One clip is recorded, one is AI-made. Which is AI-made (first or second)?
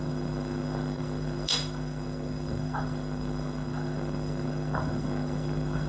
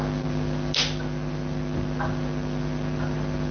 first